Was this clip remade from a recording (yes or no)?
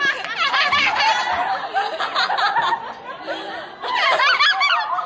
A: no